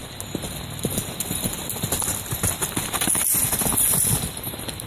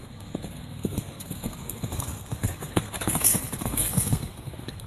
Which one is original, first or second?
first